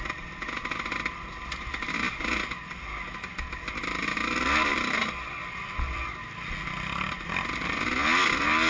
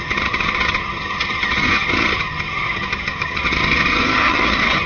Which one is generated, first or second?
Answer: second